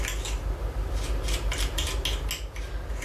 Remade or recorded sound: recorded